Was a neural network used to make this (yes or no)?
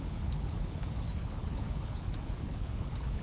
yes